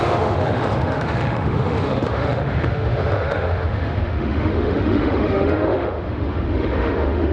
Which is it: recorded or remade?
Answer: remade